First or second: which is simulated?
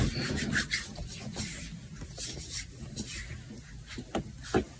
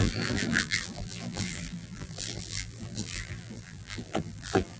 second